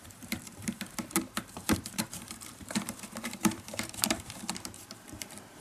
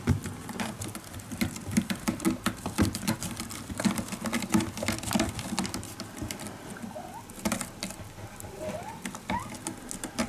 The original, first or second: second